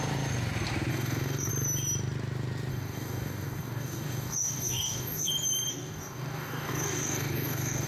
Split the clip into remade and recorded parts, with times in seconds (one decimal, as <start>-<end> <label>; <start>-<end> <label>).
0.0-0.9 recorded; 0.9-1.5 remade; 1.5-2.7 recorded; 2.7-5.3 remade; 5.3-5.7 recorded; 5.7-7.9 remade